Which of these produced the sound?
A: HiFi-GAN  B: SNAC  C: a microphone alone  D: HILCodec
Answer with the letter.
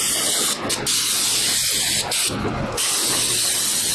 C